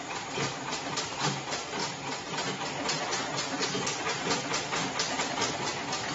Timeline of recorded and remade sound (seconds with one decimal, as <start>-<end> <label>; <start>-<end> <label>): 0.0-6.1 recorded